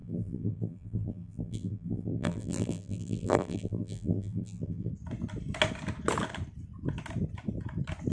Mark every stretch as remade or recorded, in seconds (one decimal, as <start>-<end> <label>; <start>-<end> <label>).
0.0-4.9 remade; 4.9-8.1 recorded